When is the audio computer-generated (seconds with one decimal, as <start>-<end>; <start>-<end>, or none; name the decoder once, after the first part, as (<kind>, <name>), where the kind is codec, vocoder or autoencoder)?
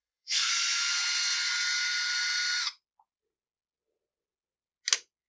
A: 0.0-0.5 (codec, SNAC)